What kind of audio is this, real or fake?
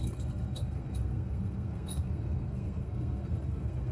fake